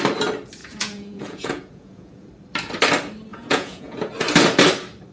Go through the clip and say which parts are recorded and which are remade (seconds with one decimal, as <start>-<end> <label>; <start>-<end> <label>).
0.0-0.6 recorded; 0.6-2.3 remade; 2.3-3.3 recorded; 3.3-4.1 remade; 4.1-5.1 recorded